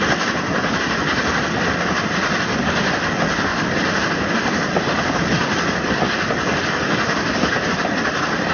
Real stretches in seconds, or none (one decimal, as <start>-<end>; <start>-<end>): 0.0-8.5

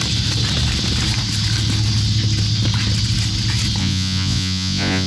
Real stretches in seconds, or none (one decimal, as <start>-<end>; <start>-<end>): 0.0-3.8

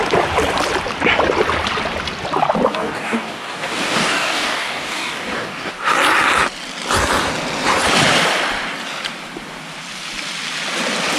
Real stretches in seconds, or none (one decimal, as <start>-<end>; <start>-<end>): 0.0-2.7; 5.7-11.2

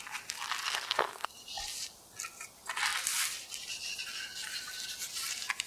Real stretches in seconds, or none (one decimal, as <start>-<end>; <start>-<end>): 0.0-0.6; 1.3-5.7